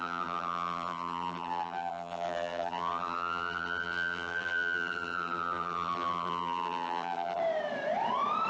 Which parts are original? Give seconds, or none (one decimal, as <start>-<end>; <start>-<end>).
7.4-8.5

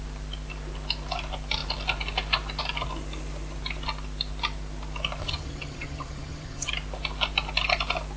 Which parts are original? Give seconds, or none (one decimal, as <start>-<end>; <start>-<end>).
0.0-5.2; 6.7-8.2

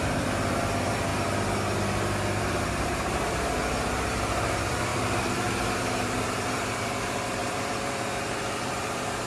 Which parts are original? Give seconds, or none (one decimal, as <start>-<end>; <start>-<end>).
1.1-2.4

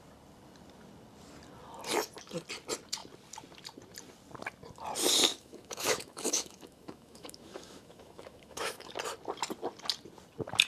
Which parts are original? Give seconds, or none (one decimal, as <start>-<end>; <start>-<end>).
0.0-5.3; 8.9-10.7

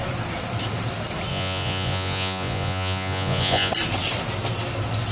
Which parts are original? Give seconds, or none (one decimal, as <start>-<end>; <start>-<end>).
0.0-1.3; 3.7-5.1

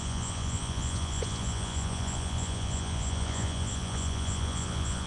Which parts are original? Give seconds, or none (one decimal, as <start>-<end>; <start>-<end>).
none

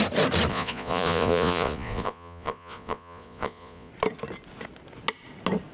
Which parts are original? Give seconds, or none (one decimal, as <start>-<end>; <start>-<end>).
0.0-0.5; 3.9-5.7